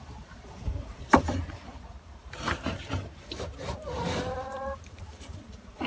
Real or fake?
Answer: fake